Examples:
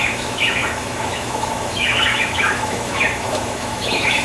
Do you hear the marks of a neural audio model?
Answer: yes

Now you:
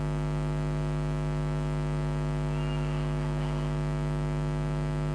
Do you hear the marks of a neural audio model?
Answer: no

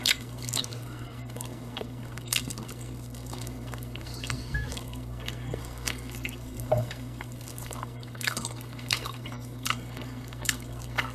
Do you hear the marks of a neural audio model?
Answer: yes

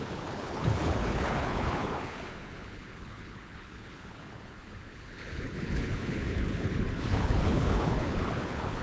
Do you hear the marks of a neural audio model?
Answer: yes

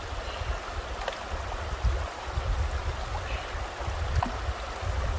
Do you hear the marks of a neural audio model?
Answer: no